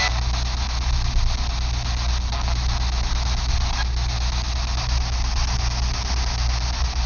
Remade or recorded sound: recorded